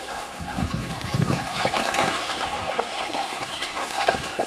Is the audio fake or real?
fake